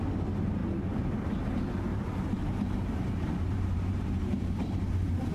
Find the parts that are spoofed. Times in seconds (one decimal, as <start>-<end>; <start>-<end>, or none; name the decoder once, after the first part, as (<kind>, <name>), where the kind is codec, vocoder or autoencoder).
0.6-1.4 (vocoder, BigVGAN v2); 1.9-5.3